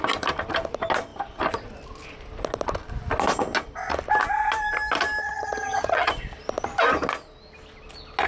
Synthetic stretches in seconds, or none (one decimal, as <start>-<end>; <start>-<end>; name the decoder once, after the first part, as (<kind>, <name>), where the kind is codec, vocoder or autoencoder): 5.2-6.1 (vocoder, HiFi-GAN)

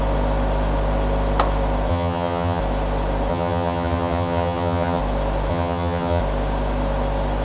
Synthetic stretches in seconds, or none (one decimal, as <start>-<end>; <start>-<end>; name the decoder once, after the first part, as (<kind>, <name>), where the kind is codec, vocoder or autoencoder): 1.9-2.6 (vocoder, HiFi-GAN); 3.3-5.0; 5.5-6.2

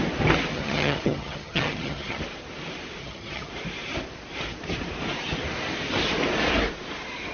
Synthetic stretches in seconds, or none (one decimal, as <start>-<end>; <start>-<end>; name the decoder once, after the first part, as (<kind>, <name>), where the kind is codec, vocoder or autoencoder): 0.5-2.2 (vocoder, HiFi-GAN); 3.0-3.5

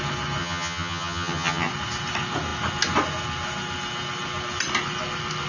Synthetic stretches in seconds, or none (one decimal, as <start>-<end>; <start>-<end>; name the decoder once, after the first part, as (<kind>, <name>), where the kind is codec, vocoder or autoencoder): 0.4-1.7 (vocoder, HiFi-GAN)